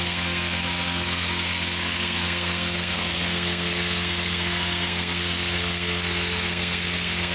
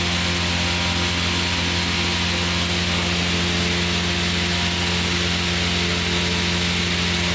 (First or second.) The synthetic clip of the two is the first